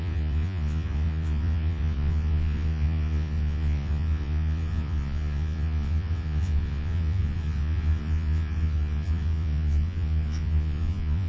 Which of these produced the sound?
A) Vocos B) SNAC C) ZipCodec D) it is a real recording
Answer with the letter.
A